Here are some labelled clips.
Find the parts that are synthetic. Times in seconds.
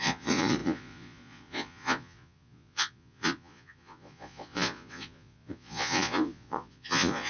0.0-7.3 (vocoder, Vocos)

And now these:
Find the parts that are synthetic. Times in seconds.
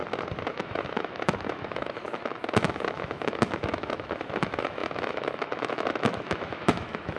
0.5-7.2 (autoencoder, DAC-VAE)